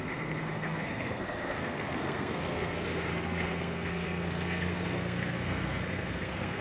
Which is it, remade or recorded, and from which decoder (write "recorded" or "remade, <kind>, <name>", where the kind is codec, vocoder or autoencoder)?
remade, codec, SNAC